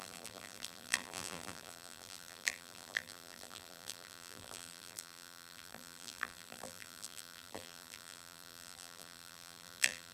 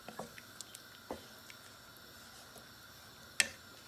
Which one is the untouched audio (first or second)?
second